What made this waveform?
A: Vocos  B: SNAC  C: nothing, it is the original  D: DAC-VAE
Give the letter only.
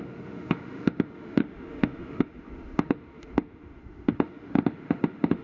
D